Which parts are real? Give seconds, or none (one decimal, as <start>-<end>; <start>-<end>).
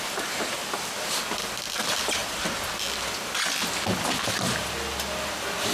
0.0-0.6; 1.2-5.7